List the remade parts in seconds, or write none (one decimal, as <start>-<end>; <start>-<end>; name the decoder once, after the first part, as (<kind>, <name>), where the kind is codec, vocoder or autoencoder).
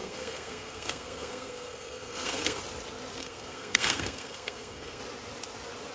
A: 0.0-2.6 (codec, SNAC); 3.2-5.0